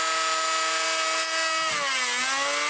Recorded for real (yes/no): yes